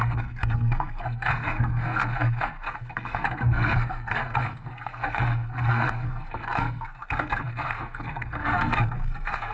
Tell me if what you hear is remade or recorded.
remade